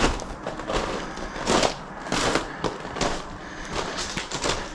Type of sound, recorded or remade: recorded